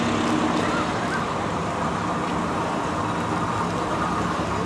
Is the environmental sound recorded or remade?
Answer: recorded